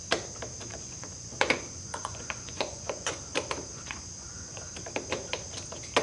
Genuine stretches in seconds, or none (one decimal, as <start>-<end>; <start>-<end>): 0.0-0.7; 3.2-3.7; 4.7-6.0